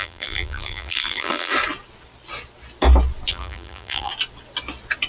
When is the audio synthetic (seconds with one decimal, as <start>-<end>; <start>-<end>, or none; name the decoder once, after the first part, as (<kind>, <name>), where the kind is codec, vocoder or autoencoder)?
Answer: 0.0-1.5 (vocoder, BigVGAN v2); 3.3-4.1